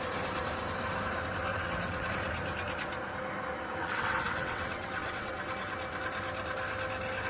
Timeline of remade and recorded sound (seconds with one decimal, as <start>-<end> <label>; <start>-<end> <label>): 0.0-1.5 recorded; 1.5-2.1 remade; 2.1-3.8 recorded; 3.8-5.3 remade; 5.3-7.3 recorded